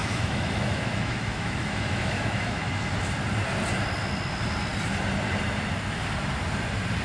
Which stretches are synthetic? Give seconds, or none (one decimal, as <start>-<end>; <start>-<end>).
0.0-2.7